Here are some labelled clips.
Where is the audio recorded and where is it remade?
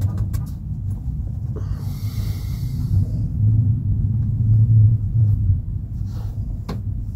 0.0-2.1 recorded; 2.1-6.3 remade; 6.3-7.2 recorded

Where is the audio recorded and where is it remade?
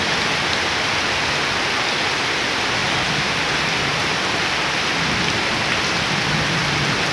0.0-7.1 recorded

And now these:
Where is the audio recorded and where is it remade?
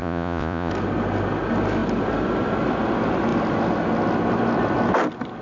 0.0-0.7 remade; 0.7-5.4 recorded